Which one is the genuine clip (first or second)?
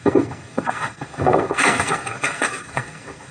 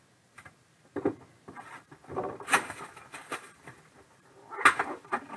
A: second